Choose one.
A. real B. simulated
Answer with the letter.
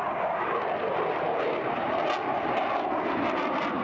A